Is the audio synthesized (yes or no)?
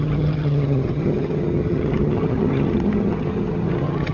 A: yes